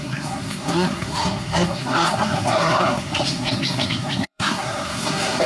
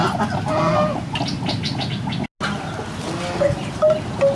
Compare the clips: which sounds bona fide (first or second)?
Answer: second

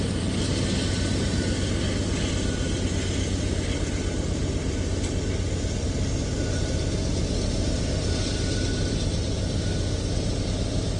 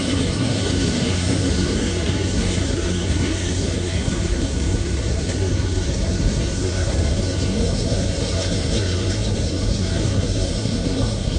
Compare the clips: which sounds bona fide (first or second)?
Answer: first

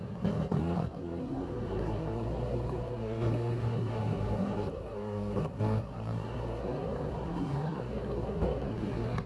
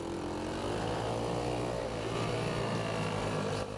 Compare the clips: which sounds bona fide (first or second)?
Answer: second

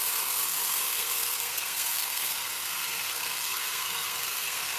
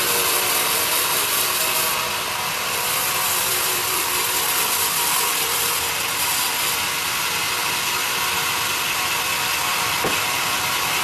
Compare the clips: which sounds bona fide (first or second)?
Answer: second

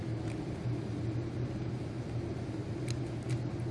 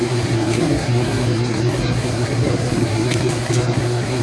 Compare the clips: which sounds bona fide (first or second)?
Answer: first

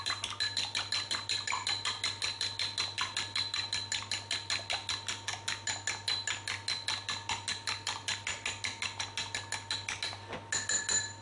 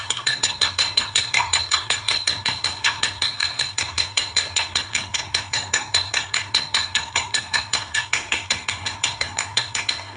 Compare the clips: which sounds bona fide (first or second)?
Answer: first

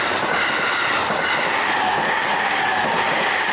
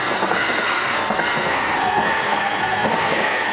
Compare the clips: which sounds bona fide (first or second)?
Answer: first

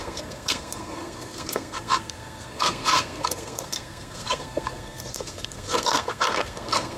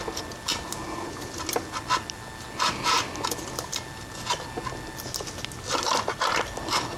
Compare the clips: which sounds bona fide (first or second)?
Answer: second